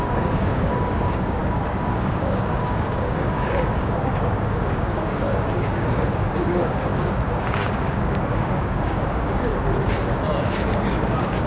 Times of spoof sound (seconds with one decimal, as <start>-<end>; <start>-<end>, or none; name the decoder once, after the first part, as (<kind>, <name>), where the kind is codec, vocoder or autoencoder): 0.0-9.5 (codec, DAC); 10.5-11.5